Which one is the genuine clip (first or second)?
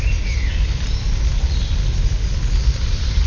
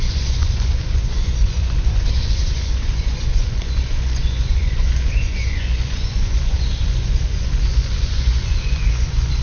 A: first